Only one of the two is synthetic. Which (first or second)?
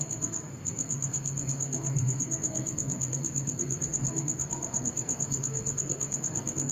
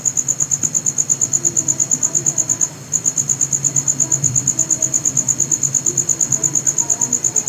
first